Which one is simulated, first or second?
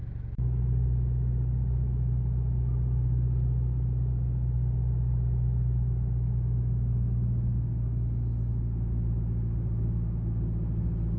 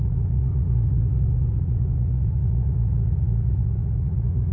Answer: second